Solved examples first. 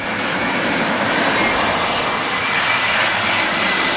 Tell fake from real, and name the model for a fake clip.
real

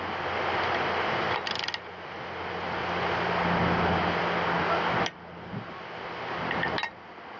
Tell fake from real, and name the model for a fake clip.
real